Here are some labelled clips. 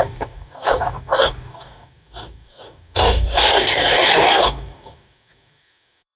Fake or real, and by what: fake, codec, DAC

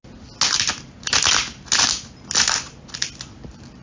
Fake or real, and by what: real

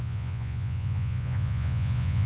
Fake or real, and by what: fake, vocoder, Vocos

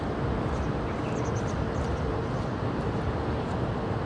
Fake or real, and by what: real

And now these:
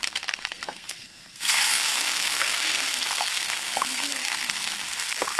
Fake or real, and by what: fake, codec, SNAC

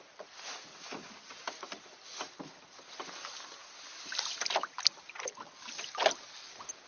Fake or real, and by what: real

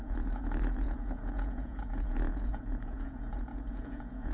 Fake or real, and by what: fake, vocoder, Vocos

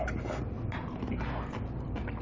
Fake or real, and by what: real